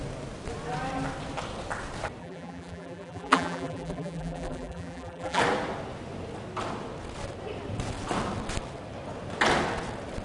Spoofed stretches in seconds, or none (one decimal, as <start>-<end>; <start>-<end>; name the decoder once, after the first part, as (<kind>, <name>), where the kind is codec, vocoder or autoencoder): 2.2-5.4 (vocoder, BigVGAN v2)